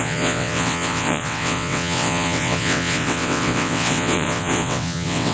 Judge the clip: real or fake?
fake